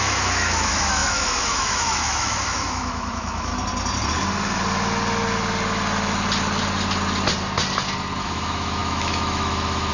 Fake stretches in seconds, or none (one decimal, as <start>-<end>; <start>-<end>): 0.0-3.5; 8.2-9.9